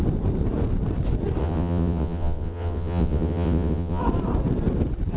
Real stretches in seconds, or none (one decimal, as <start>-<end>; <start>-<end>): 0.0-1.4; 4.0-5.2